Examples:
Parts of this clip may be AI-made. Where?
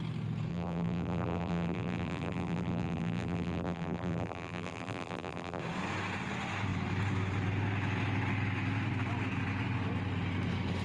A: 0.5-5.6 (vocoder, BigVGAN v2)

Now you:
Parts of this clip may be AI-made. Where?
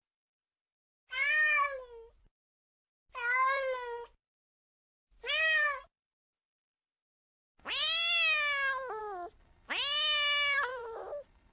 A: 10.7-11.5 (vocoder, BigVGAN v2)